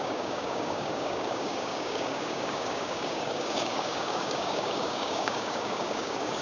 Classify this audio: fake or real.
fake